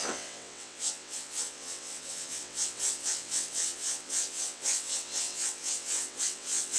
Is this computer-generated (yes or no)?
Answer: yes